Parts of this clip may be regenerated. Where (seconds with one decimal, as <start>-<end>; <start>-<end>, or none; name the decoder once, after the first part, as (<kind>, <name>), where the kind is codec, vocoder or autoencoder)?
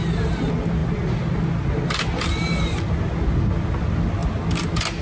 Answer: none